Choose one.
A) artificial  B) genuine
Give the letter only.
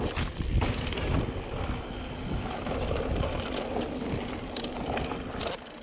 B